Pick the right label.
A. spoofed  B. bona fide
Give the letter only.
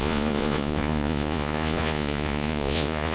A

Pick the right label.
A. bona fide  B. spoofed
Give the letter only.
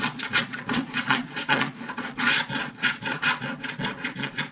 B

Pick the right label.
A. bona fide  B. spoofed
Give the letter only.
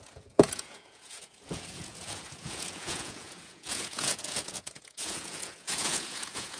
B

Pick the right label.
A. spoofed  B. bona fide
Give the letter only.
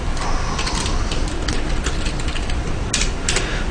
B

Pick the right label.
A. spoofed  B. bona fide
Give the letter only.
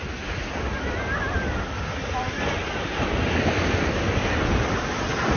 B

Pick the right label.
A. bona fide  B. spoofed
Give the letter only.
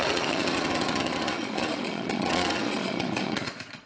B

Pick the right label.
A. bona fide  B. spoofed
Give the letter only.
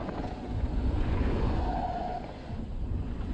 B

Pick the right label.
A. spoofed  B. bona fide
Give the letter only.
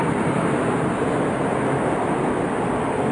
B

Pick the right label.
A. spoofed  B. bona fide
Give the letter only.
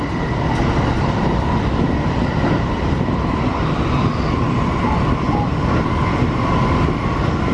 B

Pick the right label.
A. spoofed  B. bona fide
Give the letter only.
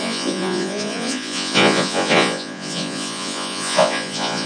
A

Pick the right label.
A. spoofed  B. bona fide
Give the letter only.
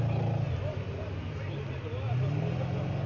B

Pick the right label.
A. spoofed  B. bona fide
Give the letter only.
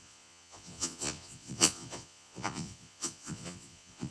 A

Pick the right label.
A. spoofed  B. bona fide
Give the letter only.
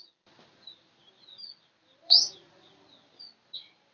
B